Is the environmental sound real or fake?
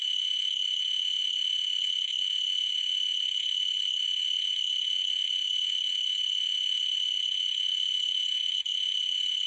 fake